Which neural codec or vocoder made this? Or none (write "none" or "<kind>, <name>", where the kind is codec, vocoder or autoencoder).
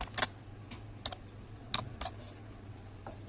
none